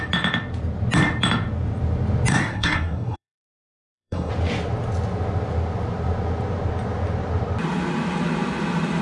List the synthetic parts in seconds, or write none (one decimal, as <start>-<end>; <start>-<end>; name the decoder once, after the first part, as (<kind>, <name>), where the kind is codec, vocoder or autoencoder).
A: 2.3-4.3 (codec, SNAC)